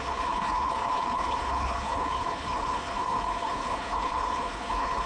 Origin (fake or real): fake